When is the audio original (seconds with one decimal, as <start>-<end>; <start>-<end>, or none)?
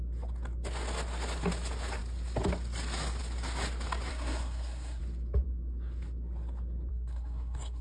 0.0-4.1; 5.0-6.9